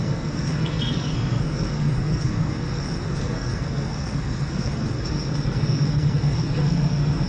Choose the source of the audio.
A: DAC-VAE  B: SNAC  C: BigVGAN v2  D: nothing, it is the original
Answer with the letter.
B